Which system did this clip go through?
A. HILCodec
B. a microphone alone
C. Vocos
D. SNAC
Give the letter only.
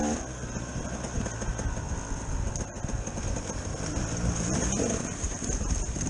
B